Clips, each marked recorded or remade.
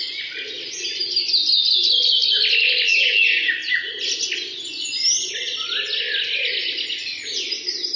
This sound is recorded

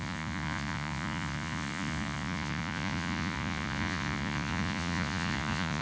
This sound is remade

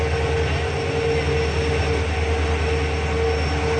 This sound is recorded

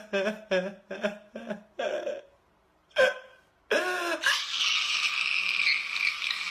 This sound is recorded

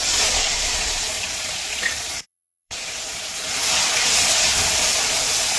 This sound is remade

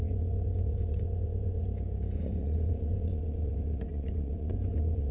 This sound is remade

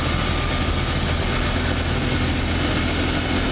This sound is recorded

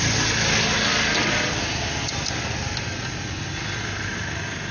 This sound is recorded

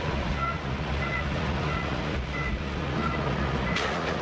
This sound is remade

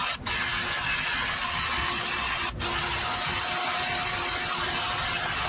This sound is recorded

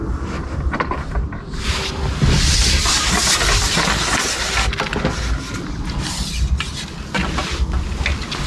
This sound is recorded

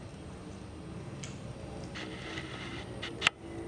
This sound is recorded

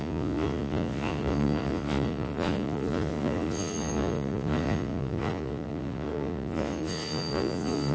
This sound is remade